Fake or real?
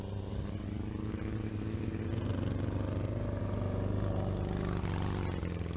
real